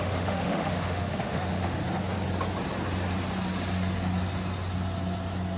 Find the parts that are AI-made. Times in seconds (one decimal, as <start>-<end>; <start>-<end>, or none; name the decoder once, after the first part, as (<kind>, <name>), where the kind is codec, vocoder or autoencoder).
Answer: 0.0-1.8 (autoencoder, DAC-VAE)